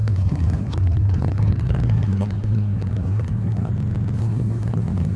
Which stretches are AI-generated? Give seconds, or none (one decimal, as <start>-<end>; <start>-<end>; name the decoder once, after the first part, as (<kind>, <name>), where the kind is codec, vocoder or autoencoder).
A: 0.0-3.7 (codec, SNAC); 4.2-5.2